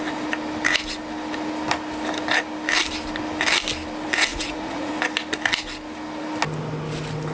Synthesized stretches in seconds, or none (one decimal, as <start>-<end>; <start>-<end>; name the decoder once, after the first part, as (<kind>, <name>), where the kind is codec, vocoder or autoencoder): 4.3-4.9 (vocoder, Vocos)